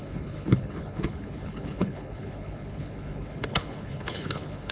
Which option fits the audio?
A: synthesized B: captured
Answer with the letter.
A